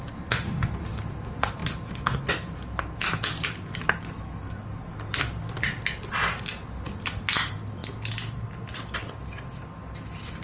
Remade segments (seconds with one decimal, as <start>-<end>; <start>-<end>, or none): none